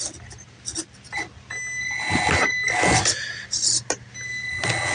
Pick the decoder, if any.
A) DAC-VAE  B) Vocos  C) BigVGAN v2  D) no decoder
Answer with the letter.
D